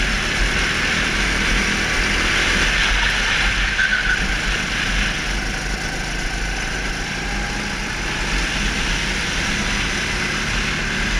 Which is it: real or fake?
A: real